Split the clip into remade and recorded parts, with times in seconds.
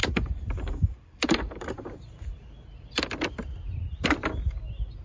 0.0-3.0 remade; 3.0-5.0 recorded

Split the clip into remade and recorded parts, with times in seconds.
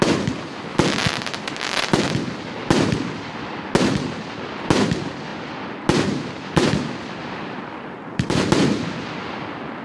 0.0-7.2 recorded; 7.2-8.5 remade; 8.5-9.8 recorded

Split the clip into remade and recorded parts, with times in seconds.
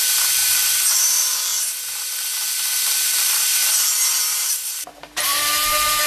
0.0-0.4 remade; 0.4-0.9 recorded; 0.9-1.5 remade; 1.5-2.9 recorded; 2.9-3.6 remade; 3.6-4.2 recorded; 4.2-6.1 remade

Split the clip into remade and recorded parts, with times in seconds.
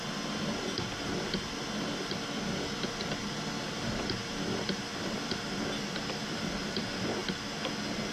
0.0-8.1 recorded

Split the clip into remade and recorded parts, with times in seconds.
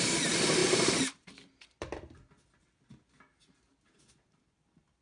0.0-0.6 recorded; 0.6-2.2 remade; 2.2-5.0 recorded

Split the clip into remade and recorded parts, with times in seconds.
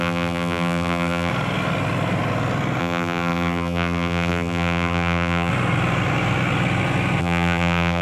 0.0-1.3 remade; 1.3-2.8 recorded; 2.8-5.5 remade; 5.5-7.2 recorded; 7.2-8.0 remade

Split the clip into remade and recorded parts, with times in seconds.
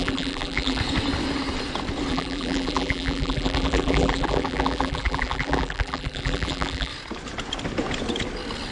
0.0-0.8 remade; 0.8-2.1 recorded; 2.1-6.9 remade; 6.9-8.7 recorded